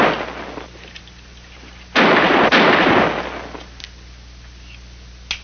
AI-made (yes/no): no